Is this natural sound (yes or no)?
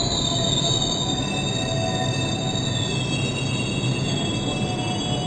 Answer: yes